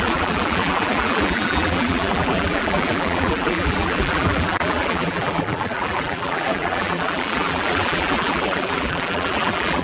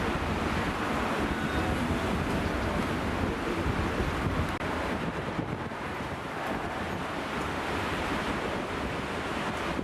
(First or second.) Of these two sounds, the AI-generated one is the first